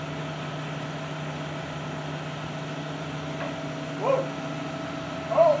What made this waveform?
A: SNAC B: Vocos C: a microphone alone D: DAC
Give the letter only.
C